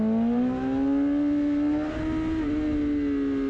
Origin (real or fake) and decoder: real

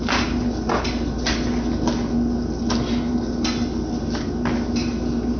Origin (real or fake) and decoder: real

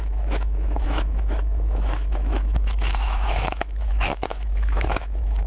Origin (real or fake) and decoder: fake, autoencoder, DAC-VAE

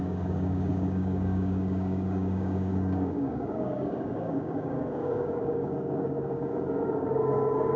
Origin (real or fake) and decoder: fake, codec, DAC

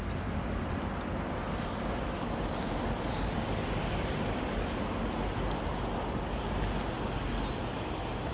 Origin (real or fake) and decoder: real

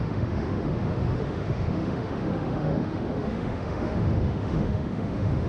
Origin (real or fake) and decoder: fake, autoencoder, DAC-VAE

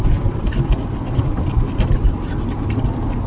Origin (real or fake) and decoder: real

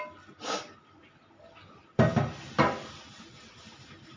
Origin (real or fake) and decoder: real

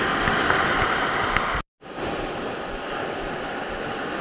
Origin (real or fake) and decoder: real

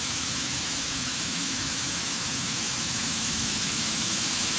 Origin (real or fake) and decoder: fake, autoencoder, DAC-VAE